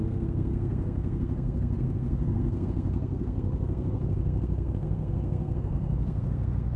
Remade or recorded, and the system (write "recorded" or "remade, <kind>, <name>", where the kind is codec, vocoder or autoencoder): remade, codec, SNAC